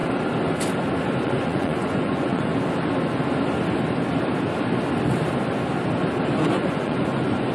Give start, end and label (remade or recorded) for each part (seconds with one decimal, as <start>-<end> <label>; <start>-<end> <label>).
0.0-1.2 recorded; 1.2-2.5 remade; 2.5-6.5 recorded; 6.5-7.5 remade